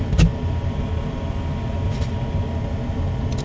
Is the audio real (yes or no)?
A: yes